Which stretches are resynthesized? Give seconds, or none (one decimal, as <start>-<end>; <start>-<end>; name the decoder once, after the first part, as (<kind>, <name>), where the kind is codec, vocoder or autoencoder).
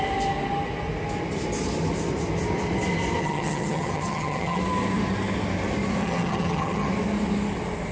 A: 3.2-4.6 (vocoder, HiFi-GAN); 6.0-6.9